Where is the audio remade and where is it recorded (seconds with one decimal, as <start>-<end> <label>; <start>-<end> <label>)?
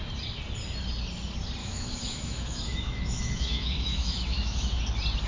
0.0-1.6 recorded; 1.6-4.8 remade; 4.8-5.3 recorded